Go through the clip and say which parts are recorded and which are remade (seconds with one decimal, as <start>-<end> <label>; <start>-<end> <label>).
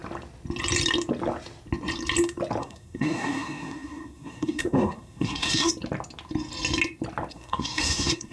0.0-2.6 recorded; 2.6-5.7 remade; 5.7-7.3 recorded; 7.3-8.3 remade